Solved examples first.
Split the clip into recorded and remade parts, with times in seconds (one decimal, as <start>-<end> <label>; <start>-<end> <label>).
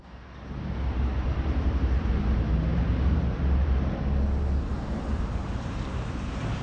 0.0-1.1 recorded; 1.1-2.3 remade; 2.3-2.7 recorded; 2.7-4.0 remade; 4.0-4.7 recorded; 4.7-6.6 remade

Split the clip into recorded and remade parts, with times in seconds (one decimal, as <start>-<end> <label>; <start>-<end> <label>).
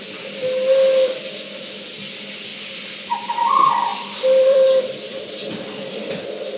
0.0-2.5 recorded; 2.5-3.2 remade; 3.2-3.9 recorded; 3.9-5.3 remade; 5.3-6.6 recorded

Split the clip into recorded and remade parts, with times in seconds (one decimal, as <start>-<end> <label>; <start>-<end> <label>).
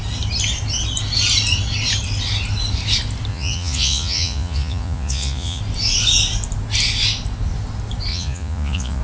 0.0-3.3 recorded; 3.3-5.6 remade; 5.6-8.1 recorded; 8.1-9.0 remade